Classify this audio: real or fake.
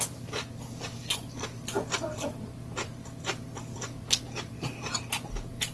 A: real